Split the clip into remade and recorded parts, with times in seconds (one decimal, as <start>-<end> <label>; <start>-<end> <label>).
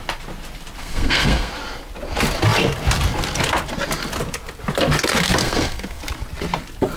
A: 0.0-0.8 recorded; 0.8-1.5 remade; 1.5-5.4 recorded; 5.4-6.0 remade; 6.0-7.0 recorded